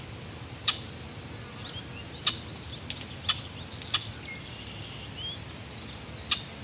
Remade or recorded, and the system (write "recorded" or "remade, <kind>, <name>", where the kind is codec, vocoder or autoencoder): recorded